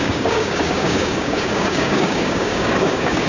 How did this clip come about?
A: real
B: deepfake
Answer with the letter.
B